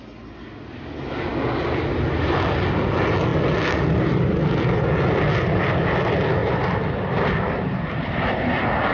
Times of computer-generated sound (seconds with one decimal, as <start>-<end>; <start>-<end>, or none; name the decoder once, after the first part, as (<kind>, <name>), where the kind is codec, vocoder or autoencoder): 3.3-4.8 (vocoder, BigVGAN v2); 6.4-8.5

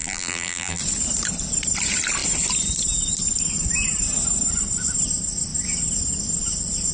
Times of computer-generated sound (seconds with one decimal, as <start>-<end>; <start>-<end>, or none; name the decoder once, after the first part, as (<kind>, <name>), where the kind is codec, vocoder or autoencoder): 0.0-0.8 (vocoder, BigVGAN v2)